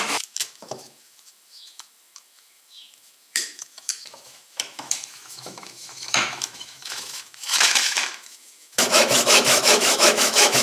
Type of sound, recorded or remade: remade